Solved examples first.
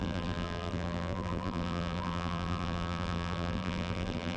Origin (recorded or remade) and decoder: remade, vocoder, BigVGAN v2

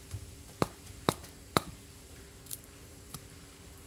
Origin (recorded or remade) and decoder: remade, vocoder, BigVGAN v2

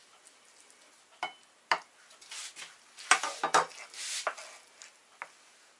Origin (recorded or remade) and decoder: recorded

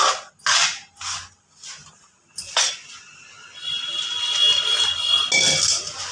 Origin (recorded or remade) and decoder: recorded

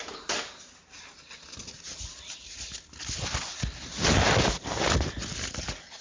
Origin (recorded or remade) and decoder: recorded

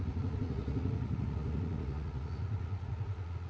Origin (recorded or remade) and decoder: remade, vocoder, Vocos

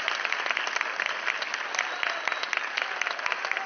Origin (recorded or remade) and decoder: recorded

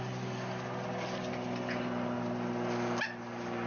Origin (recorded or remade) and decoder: recorded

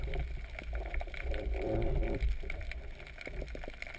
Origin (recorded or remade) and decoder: recorded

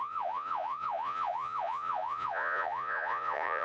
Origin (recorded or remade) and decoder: remade, vocoder, Vocos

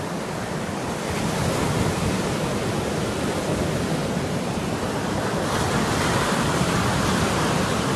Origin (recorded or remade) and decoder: recorded